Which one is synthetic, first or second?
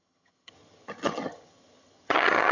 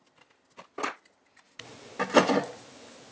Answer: first